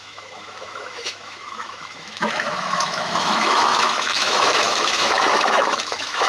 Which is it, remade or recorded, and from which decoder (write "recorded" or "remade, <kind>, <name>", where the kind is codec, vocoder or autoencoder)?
remade, autoencoder, DAC-VAE